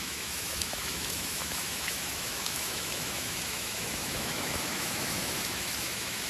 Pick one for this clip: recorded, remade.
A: remade